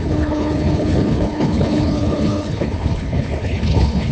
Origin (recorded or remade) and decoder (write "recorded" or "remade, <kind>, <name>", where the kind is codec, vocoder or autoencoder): remade, codec, HILCodec